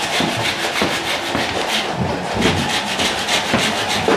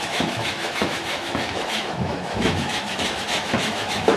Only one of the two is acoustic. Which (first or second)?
first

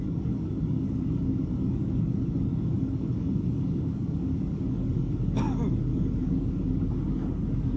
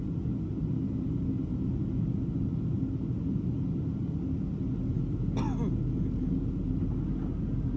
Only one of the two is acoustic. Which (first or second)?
second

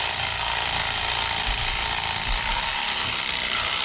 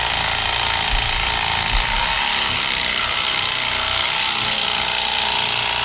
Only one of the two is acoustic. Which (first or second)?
second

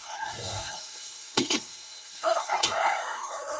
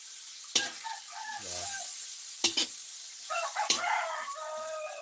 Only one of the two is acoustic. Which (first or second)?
second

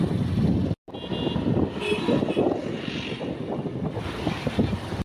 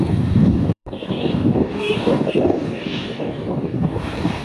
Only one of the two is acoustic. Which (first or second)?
first